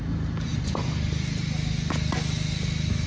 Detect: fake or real real